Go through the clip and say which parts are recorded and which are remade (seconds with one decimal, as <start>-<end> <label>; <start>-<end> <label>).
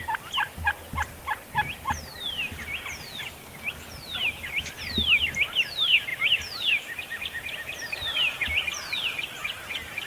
0.0-6.1 recorded; 6.1-6.7 remade; 6.7-10.1 recorded